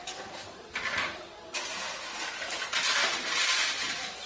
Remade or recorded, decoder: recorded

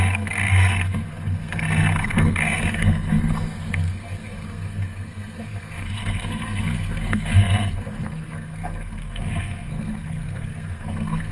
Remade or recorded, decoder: remade, codec, SNAC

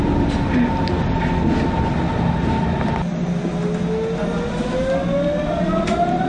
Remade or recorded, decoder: recorded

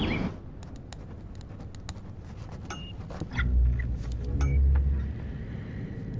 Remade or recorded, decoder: recorded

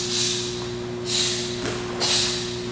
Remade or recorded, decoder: recorded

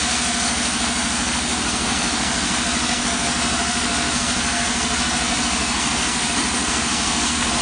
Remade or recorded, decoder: remade, codec, SNAC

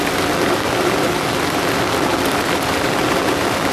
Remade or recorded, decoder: recorded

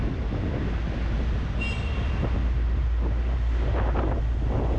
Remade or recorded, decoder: recorded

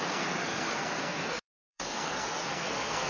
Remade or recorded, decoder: remade, codec, SNAC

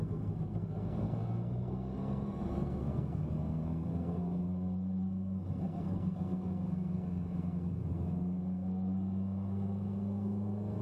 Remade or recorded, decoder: remade, codec, SNAC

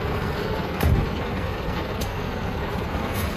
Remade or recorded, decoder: remade, codec, SNAC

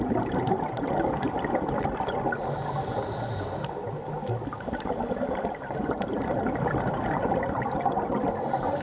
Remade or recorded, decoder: recorded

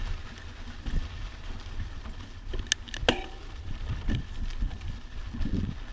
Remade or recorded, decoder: recorded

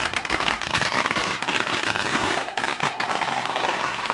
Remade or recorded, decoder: remade, codec, SNAC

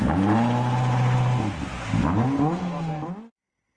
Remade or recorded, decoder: recorded